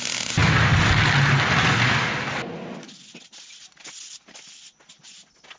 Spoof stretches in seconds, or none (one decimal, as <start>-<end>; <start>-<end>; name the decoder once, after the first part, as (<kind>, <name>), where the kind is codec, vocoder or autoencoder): none